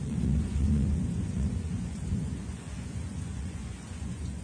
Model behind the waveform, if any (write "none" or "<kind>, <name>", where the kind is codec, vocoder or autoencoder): vocoder, Vocos